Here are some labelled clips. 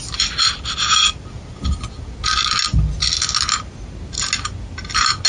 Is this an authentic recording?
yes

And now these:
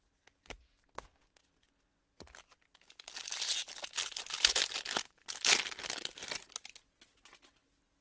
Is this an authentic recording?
yes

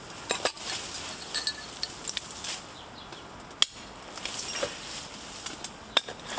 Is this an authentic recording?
yes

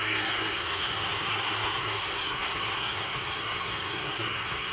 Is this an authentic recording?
no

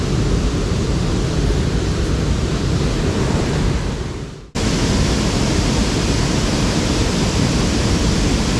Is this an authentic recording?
yes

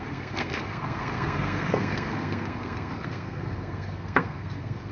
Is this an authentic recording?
no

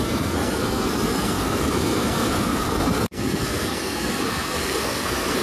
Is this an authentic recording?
no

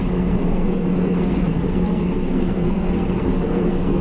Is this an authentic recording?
no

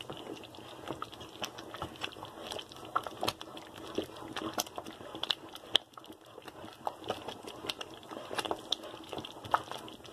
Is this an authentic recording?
yes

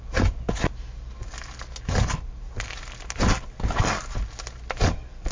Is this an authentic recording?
yes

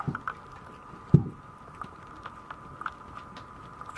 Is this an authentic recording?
yes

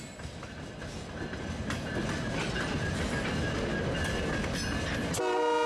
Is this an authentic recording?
yes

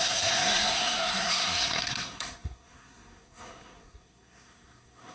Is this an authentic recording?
no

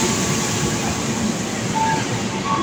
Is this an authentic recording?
yes